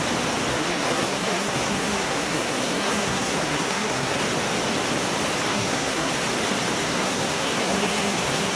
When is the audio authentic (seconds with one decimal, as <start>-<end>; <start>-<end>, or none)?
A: 0.0-0.5; 4.2-5.5; 6.1-6.8